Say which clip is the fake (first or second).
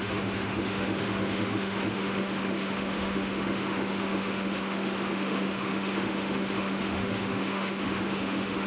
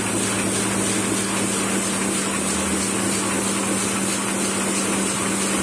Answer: first